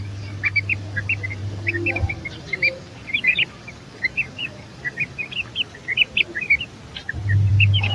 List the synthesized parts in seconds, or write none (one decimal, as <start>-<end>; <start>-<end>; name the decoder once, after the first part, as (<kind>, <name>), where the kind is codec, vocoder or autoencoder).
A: 0.0-5.5 (codec, DAC); 7.5-7.9